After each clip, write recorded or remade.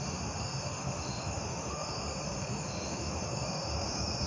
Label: remade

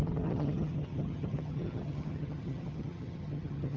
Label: remade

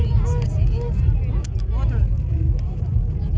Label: recorded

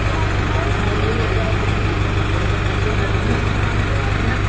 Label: recorded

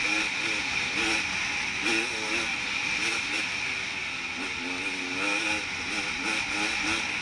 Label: recorded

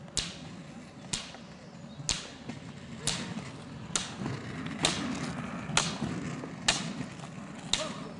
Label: recorded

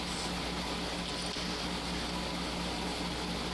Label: recorded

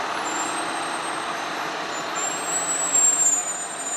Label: recorded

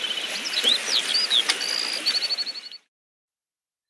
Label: recorded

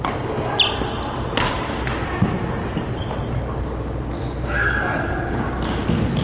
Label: recorded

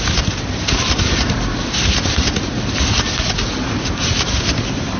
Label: recorded